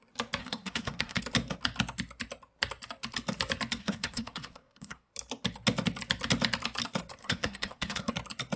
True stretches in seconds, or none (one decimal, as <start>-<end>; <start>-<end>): 0.0-0.4; 1.2-3.8; 5.1-7.2; 8.1-8.6